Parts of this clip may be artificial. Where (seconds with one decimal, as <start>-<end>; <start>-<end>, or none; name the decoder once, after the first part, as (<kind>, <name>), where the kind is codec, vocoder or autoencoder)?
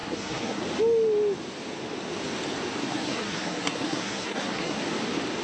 0.0-0.6 (codec, SNAC); 2.8-4.8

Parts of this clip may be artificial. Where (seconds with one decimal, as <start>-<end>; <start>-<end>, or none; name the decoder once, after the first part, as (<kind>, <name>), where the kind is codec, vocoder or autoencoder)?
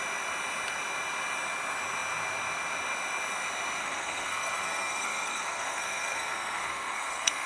3.8-7.5 (codec, SNAC)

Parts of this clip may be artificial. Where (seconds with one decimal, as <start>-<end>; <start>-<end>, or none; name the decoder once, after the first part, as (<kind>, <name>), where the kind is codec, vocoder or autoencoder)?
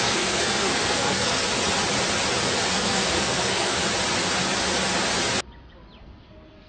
0.0-1.4 (codec, SNAC); 2.7-3.8; 6.0-6.7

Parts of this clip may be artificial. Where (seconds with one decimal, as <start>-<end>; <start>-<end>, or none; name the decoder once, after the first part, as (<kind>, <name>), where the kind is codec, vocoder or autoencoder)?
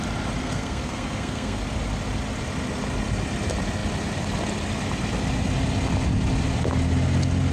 0.4-1.6 (codec, SNAC)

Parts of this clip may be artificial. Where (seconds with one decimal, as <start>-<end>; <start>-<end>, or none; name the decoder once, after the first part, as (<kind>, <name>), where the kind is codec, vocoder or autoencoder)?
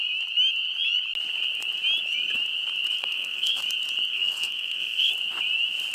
3.0-3.6 (codec, SNAC); 4.1-5.1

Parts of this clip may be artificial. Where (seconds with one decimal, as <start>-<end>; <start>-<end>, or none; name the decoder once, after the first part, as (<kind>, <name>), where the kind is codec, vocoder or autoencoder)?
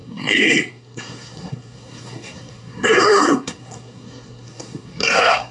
0.0-5.5 (codec, SNAC)